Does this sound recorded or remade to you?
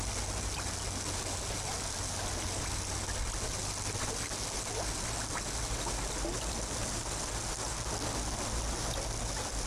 recorded